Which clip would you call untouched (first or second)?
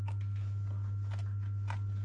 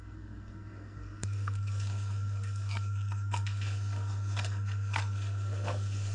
first